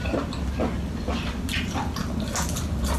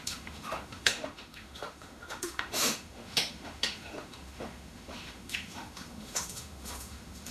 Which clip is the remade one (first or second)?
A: second